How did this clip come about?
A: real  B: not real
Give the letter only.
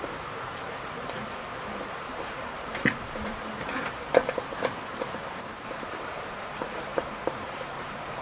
B